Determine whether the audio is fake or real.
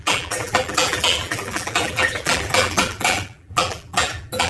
fake